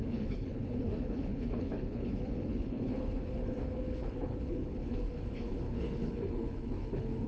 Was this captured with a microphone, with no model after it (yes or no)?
no